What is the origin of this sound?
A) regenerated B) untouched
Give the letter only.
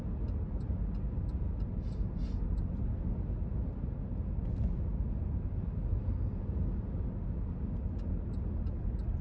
B